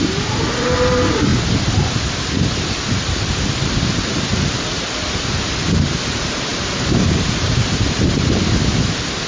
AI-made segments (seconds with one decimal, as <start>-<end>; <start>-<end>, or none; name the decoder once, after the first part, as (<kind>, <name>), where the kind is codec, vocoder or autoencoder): 6.5-7.7 (vocoder, BigVGAN v2)